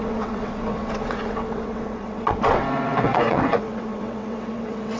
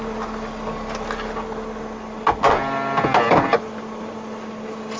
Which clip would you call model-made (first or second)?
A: first